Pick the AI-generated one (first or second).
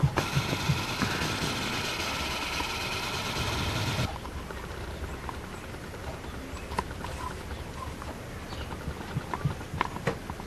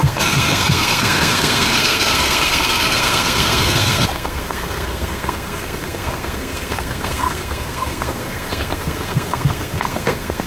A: second